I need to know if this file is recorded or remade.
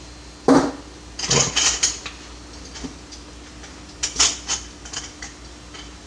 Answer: recorded